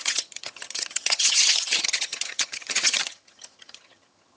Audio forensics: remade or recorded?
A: remade